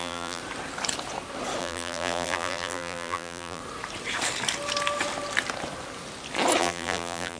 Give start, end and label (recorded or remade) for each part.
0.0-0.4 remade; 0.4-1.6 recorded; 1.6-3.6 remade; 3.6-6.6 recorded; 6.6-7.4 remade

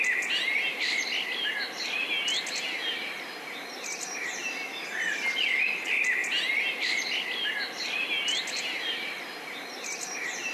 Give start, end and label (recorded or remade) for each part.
0.0-0.7 recorded; 0.7-1.4 remade; 1.4-8.3 recorded; 8.3-9.2 remade; 9.2-10.5 recorded

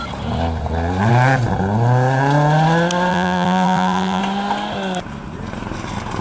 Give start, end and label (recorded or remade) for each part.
0.0-3.1 recorded; 3.1-4.2 remade; 4.2-6.2 recorded

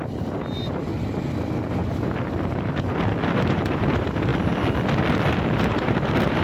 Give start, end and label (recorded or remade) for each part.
0.0-0.9 remade; 0.9-1.8 recorded; 1.8-4.3 remade; 4.3-5.6 recorded; 5.6-6.4 remade

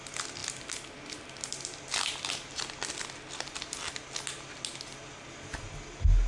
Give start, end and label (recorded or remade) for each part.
0.0-6.3 recorded

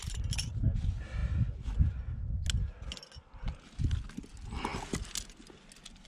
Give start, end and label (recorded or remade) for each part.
0.0-6.1 recorded